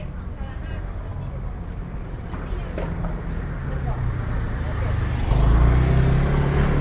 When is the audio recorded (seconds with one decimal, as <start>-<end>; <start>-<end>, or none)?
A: 0.0-6.8